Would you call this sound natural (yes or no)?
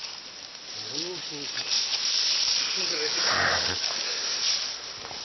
yes